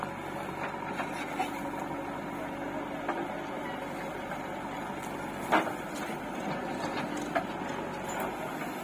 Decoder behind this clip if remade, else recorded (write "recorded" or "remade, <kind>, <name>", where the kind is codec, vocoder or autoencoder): recorded